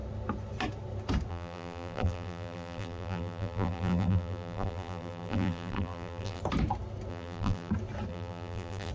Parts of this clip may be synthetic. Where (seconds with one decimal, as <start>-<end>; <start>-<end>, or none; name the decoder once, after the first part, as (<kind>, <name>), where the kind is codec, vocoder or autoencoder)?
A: 1.3-6.4 (vocoder, BigVGAN v2); 7.1-7.7; 8.1-8.9

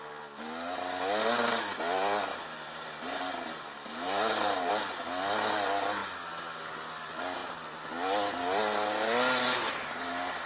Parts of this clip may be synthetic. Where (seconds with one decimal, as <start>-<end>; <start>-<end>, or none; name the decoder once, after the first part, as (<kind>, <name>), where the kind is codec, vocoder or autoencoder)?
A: 2.3-4.7 (vocoder, BigVGAN v2)